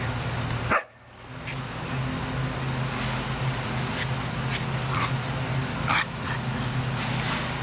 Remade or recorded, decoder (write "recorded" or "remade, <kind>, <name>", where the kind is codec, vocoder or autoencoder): recorded